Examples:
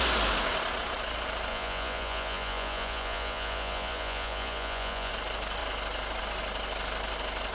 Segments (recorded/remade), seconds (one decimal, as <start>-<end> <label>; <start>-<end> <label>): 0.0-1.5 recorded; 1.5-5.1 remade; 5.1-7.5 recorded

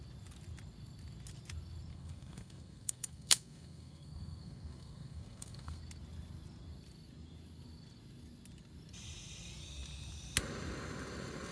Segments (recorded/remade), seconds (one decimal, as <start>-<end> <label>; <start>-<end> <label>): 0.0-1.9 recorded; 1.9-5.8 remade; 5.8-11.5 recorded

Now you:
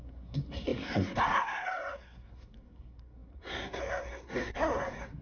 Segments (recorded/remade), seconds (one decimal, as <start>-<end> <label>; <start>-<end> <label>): 0.0-5.2 remade